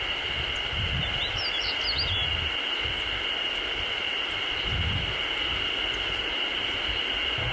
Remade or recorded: recorded